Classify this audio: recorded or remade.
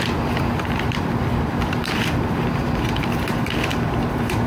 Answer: remade